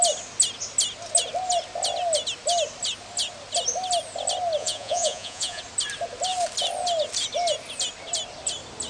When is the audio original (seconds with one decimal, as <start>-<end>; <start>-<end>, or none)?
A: 0.0-4.6; 5.6-8.9